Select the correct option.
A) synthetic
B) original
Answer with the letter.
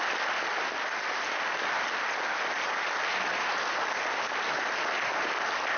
B